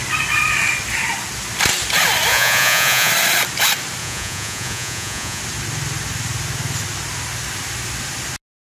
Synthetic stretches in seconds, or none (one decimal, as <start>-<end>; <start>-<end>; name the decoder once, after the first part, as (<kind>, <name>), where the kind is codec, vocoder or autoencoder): 2.3-3.1 (vocoder, Vocos); 4.0-5.4